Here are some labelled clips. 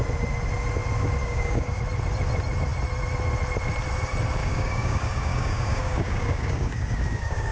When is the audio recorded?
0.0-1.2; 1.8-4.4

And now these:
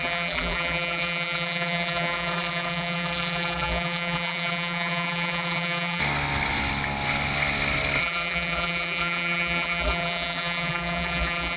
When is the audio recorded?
6.0-8.0

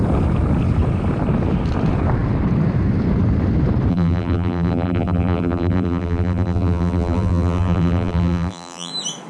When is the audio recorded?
0.0-3.9; 8.9-9.3